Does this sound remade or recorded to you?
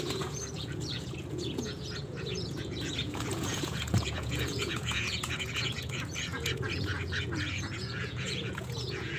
remade